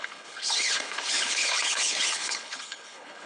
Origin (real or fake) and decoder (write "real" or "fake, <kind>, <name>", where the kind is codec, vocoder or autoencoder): fake, codec, HILCodec